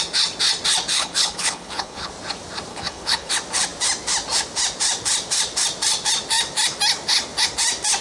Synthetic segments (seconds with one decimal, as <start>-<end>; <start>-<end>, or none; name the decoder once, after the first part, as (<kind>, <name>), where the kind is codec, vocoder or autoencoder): 1.0-2.1 (codec, HILCodec); 2.7-3.3